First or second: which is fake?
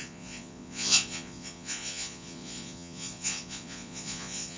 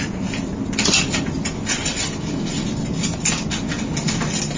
first